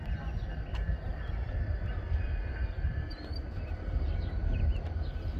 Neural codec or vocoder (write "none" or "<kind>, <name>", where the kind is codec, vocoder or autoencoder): none